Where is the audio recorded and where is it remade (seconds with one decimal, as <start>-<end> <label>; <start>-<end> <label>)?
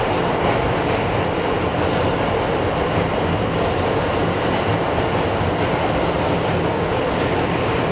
0.0-7.9 recorded